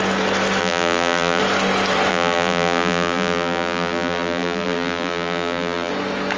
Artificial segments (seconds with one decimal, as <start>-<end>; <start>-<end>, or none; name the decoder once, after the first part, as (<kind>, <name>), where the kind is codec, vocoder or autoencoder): 0.6-1.4 (vocoder, BigVGAN v2); 2.1-5.9